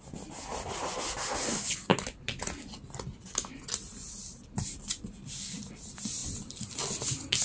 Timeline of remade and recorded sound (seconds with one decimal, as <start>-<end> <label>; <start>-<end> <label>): 0.0-7.4 recorded

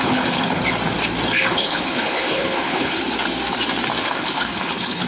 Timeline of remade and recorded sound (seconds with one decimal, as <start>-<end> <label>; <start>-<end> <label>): 0.0-0.6 remade; 0.6-1.5 recorded; 1.5-3.0 remade; 3.0-4.0 recorded; 4.0-5.1 remade

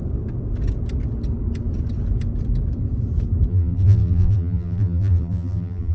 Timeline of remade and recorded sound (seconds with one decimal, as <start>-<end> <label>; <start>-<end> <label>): 0.0-3.5 recorded; 3.5-5.9 remade

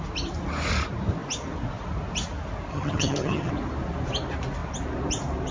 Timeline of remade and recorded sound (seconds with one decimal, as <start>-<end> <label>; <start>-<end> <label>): 0.0-2.7 recorded; 2.7-3.5 remade; 3.5-5.5 recorded

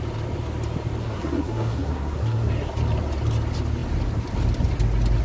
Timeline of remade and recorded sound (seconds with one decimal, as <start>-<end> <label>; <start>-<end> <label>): 0.0-1.0 recorded; 1.0-2.5 remade; 2.5-5.2 recorded